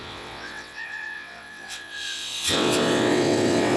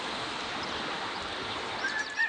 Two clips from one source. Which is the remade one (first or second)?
first